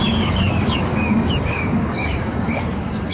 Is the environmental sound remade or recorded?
remade